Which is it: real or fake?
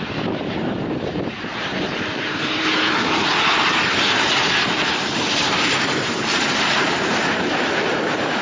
fake